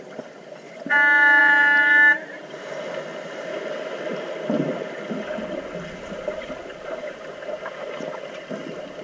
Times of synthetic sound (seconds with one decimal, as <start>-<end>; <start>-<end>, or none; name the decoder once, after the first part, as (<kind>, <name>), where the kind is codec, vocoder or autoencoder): none